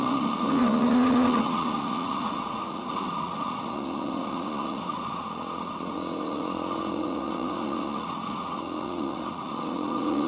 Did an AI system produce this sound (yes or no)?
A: yes